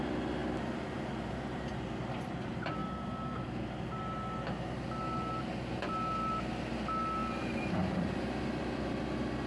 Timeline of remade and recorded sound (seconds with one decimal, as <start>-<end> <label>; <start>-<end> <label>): 0.0-7.2 recorded; 7.2-9.0 remade; 9.0-9.5 recorded